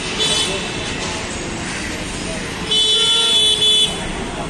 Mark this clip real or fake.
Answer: real